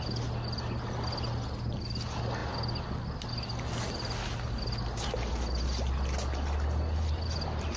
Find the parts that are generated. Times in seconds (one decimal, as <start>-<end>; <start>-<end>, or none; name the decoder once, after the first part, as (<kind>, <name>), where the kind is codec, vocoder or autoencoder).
none